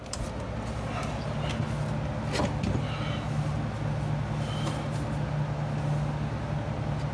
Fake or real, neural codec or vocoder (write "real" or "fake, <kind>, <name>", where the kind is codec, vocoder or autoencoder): real